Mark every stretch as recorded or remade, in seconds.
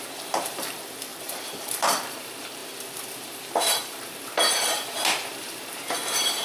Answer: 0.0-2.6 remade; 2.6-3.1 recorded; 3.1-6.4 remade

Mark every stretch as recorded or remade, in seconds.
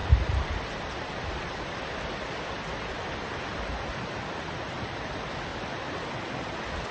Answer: 0.0-1.3 remade; 1.3-5.5 recorded; 5.5-6.2 remade; 6.2-6.9 recorded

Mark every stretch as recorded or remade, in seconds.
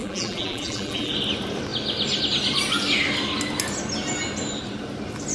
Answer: 0.0-1.1 remade; 1.1-5.3 recorded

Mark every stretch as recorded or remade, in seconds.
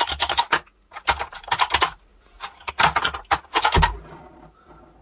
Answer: 0.0-5.0 recorded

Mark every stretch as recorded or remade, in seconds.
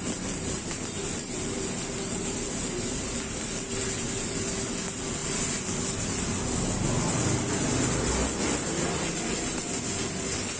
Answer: 0.0-10.6 recorded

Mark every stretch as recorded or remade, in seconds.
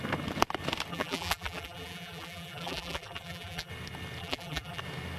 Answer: 0.0-0.9 recorded; 0.9-3.7 remade; 3.7-4.2 recorded; 4.2-4.8 remade; 4.8-5.2 recorded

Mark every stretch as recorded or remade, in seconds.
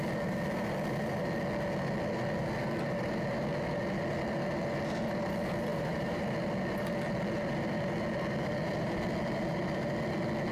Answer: 0.0-5.7 recorded; 5.7-6.2 remade; 6.2-10.5 recorded